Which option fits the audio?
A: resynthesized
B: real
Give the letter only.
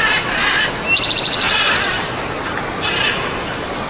B